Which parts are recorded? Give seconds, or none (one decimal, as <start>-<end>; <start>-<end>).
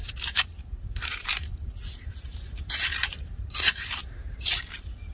none